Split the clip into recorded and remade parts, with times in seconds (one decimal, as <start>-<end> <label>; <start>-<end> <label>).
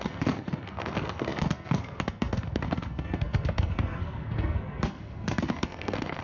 0.0-6.2 remade